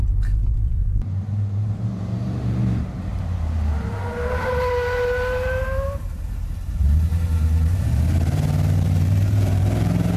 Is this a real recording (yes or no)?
no